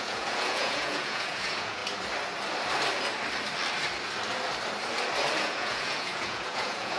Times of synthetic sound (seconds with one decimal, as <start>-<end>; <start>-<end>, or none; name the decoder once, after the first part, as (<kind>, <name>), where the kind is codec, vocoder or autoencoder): 0.0-1.8 (vocoder, Vocos); 5.4-7.0